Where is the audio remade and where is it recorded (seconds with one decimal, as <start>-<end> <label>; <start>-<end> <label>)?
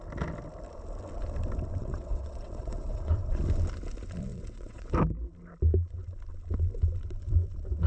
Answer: 0.0-1.8 recorded; 1.8-3.4 remade; 3.4-4.3 recorded; 4.3-4.9 remade; 4.9-7.9 recorded